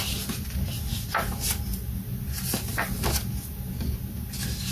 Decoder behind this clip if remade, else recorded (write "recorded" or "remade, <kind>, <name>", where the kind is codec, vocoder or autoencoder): recorded